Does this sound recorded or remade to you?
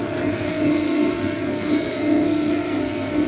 remade